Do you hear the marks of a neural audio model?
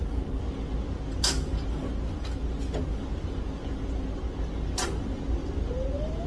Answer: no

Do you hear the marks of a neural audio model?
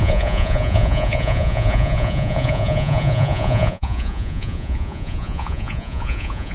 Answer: yes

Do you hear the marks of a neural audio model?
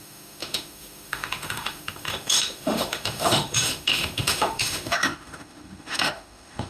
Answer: yes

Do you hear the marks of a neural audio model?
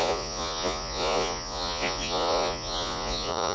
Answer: yes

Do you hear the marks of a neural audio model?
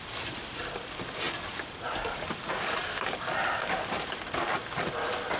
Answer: no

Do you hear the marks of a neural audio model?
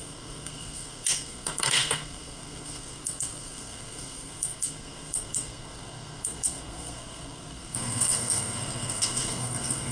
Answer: yes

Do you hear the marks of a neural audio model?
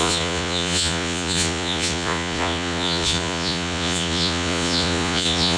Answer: yes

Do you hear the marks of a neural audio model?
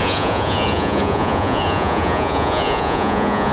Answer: yes